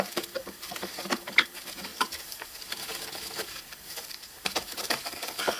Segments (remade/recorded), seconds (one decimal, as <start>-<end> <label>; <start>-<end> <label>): 0.0-5.6 remade